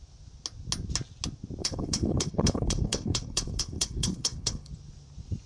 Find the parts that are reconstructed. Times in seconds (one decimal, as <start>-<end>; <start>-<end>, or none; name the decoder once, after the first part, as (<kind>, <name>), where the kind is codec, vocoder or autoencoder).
1.6-4.7 (codec, HILCodec)